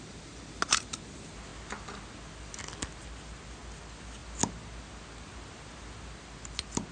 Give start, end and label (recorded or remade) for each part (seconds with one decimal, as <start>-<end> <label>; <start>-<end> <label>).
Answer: 0.0-6.9 recorded